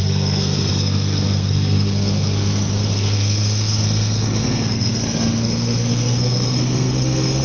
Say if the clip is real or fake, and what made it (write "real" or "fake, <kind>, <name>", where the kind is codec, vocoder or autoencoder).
fake, codec, SNAC